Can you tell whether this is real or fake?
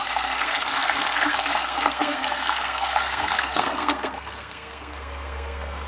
fake